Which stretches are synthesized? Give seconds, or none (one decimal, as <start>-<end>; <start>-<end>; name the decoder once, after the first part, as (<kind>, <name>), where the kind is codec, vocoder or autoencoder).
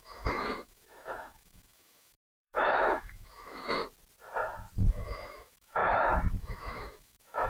0.0-3.8 (autoencoder, DAC-VAE); 4.9-5.8; 6.4-7.5